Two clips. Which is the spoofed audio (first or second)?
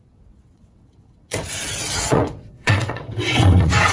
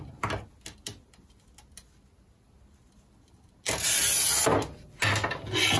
first